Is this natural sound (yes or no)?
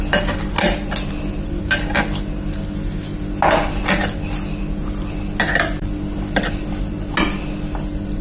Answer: yes